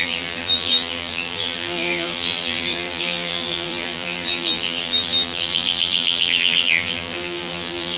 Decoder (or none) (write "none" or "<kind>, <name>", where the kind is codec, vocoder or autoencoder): vocoder, BigVGAN v2